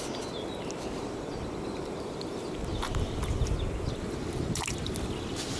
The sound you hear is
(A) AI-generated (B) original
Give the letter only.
B